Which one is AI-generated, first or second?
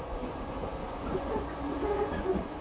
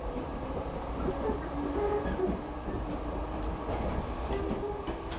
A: first